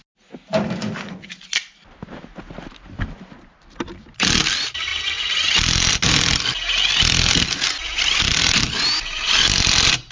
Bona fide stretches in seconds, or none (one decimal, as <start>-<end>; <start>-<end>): 0.0-10.1